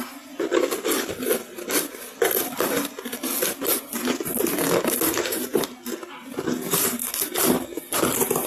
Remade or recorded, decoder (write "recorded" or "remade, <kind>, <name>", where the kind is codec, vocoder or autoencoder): recorded